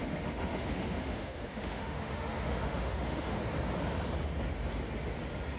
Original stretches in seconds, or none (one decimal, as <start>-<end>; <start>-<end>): 3.4-5.6